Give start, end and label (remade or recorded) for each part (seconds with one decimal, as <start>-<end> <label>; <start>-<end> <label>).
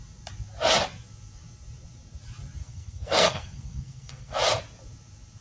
0.0-2.6 recorded; 2.6-4.4 remade; 4.4-5.4 recorded